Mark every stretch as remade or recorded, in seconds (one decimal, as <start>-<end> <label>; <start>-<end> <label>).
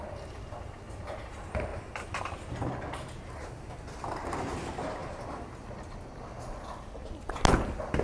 0.0-1.7 recorded; 1.7-2.2 remade; 2.2-5.0 recorded; 5.0-5.5 remade; 5.5-8.0 recorded